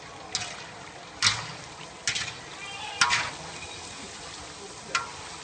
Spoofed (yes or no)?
no